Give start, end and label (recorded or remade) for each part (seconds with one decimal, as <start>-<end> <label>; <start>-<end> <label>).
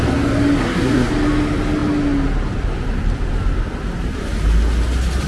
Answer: 0.0-0.6 recorded; 0.6-1.1 remade; 1.1-5.3 recorded